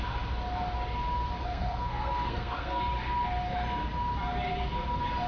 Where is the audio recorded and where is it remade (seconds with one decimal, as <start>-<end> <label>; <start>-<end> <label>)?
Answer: 0.0-1.4 recorded; 1.4-2.8 remade; 2.8-5.3 recorded